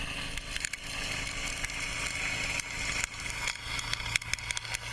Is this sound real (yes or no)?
yes